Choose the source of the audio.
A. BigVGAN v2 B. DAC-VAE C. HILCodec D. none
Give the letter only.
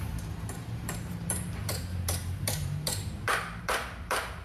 A